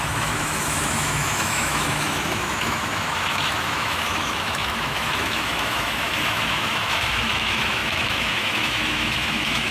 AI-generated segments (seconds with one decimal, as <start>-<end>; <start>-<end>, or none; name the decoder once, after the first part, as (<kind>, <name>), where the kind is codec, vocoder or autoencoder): 0.0-9.7 (autoencoder, DAC-VAE)

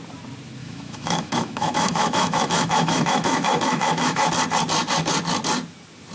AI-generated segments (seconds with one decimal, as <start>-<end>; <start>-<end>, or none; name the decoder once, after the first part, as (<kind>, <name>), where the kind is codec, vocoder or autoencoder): 0.6-4.3 (autoencoder, DAC-VAE)

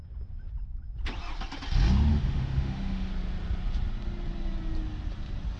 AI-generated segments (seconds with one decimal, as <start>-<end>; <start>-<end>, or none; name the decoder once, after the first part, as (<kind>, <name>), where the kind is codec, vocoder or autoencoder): 2.1-3.1 (autoencoder, DAC-VAE)

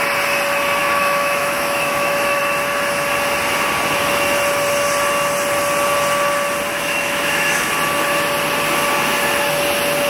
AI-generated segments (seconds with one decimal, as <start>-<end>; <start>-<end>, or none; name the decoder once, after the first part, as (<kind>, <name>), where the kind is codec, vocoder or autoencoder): 0.8-2.4 (autoencoder, DAC-VAE); 6.7-7.7

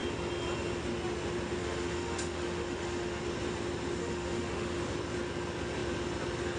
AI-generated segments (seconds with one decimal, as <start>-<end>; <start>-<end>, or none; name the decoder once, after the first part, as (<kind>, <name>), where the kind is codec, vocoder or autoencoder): 1.6-3.2 (autoencoder, DAC-VAE); 4.0-4.8